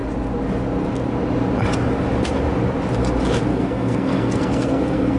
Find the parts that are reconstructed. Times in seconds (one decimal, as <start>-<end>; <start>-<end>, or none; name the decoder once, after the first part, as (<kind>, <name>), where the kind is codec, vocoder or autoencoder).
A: 3.5-5.2 (codec, SNAC)